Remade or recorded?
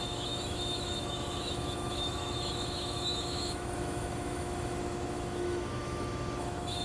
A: remade